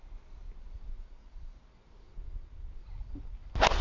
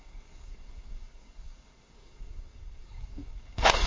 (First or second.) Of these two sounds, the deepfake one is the second